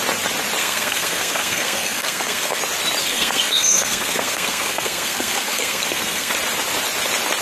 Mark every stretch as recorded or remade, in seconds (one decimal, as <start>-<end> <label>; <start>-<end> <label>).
0.0-0.6 recorded; 0.6-2.6 remade; 2.6-3.0 recorded; 3.0-6.3 remade; 6.3-7.4 recorded